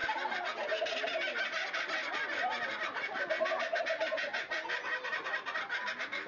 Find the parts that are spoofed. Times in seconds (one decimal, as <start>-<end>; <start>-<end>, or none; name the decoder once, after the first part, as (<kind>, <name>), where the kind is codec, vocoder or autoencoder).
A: none